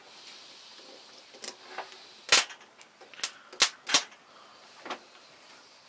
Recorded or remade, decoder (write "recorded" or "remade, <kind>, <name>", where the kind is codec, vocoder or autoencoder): recorded